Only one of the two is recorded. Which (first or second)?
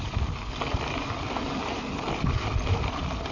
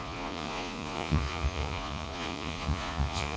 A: first